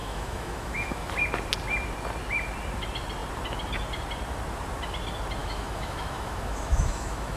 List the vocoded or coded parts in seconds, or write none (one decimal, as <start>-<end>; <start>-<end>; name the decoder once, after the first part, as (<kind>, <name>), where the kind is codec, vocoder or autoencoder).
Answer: 0.0-1.1 (autoencoder, DAC-VAE); 5.4-7.4